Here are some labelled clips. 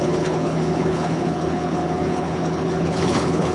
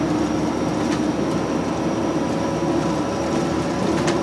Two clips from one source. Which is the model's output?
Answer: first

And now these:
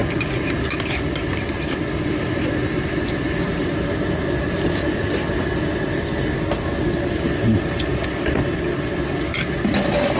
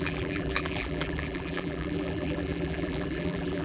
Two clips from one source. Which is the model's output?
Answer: second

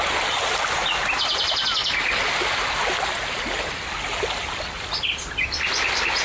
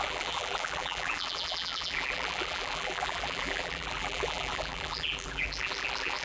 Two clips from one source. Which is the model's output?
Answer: second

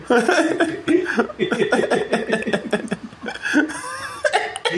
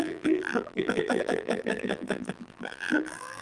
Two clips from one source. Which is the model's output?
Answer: second